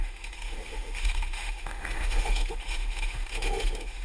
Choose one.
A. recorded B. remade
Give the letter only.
B